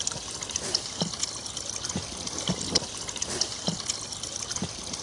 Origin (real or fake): real